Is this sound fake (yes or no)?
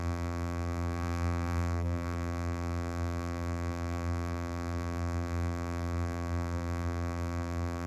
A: yes